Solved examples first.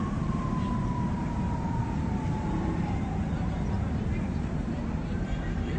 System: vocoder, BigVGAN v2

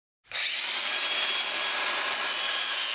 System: none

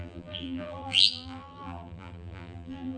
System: vocoder, BigVGAN v2